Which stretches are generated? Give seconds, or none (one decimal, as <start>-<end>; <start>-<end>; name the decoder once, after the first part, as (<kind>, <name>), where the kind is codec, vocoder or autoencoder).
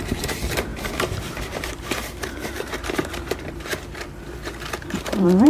0.0-3.7 (vocoder, BigVGAN v2); 4.8-5.5